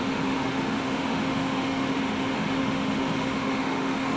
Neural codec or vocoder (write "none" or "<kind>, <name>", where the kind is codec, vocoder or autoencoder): autoencoder, DAC-VAE